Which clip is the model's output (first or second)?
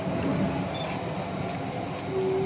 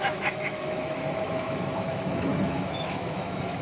second